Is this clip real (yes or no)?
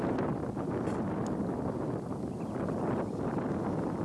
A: yes